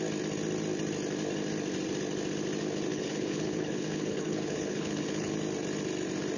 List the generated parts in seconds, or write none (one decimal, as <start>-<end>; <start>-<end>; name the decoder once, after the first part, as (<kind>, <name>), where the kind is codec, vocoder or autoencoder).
2.9-5.3 (codec, HILCodec)